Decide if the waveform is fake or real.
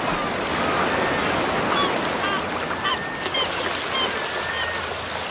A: real